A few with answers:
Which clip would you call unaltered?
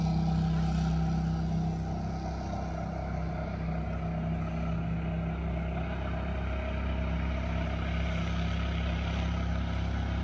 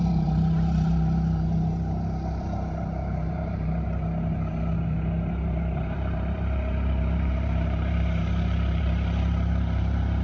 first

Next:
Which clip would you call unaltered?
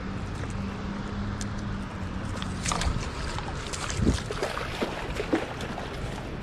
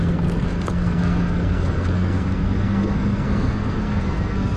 first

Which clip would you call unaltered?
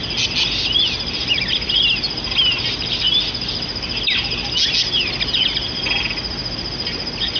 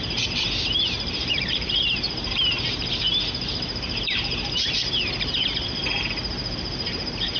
first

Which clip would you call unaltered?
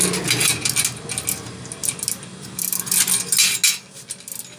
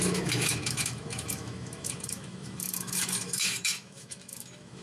first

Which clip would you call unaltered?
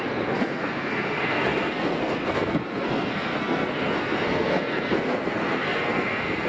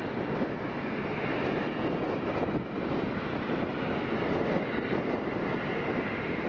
second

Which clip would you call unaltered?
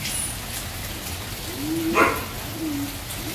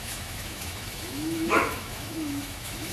first